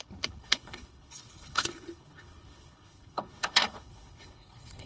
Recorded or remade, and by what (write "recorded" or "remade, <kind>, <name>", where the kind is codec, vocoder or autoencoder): remade, codec, HILCodec